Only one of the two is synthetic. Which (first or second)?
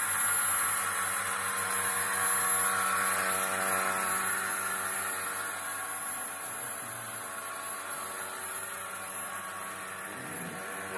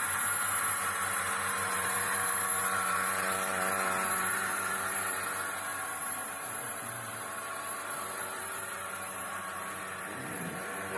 second